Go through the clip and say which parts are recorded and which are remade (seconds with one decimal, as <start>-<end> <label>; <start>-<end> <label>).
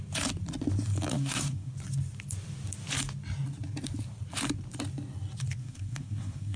0.0-1.1 recorded; 1.1-1.7 remade; 1.7-5.6 recorded; 5.6-6.6 remade